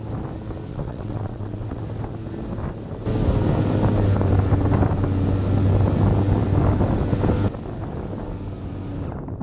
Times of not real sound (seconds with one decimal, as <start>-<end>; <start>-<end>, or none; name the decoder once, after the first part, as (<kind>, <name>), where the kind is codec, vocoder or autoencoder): 0.7-1.8 (vocoder, WaveNeXt)